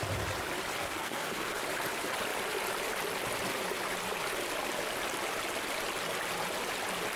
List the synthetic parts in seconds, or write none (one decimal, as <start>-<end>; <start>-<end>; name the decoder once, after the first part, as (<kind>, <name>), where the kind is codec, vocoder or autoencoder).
0.8-1.6 (codec, SNAC)